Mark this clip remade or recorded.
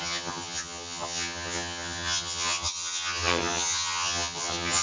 remade